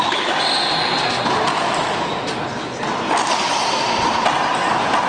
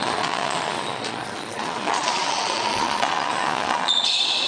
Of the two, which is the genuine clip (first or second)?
first